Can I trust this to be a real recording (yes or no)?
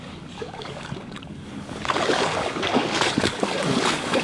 no